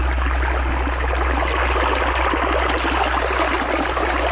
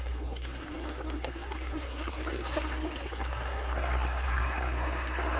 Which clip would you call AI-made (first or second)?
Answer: second